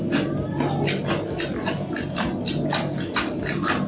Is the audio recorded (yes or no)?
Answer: yes